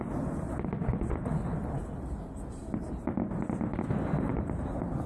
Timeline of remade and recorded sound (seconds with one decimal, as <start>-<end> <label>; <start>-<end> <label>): 0.0-5.1 recorded